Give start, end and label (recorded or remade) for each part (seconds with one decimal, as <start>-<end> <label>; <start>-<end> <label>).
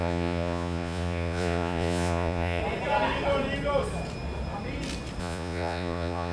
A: 0.0-2.6 remade; 2.6-5.2 recorded; 5.2-6.3 remade